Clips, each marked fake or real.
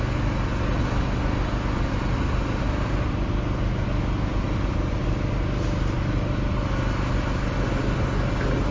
real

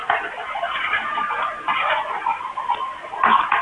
real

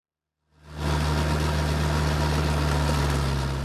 real